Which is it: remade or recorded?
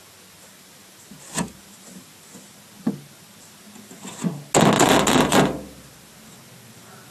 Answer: recorded